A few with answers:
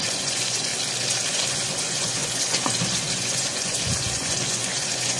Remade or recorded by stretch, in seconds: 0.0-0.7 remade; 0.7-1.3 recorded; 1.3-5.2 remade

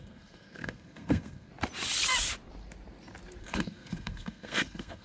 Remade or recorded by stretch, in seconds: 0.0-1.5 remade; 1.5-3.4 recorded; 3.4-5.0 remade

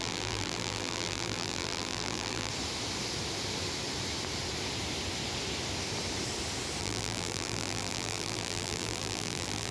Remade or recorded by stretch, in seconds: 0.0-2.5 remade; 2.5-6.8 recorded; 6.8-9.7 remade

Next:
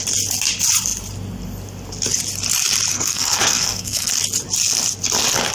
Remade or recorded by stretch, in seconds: 0.0-2.9 recorded; 2.9-4.1 remade; 4.1-5.5 recorded

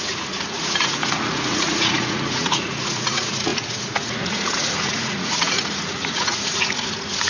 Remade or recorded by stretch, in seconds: 0.0-7.3 remade

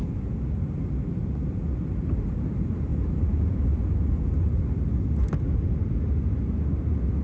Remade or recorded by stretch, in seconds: 0.0-2.9 recorded; 2.9-4.6 remade; 4.6-7.2 recorded